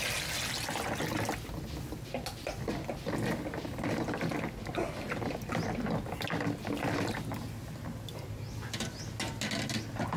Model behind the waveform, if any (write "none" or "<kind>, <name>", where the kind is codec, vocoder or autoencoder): none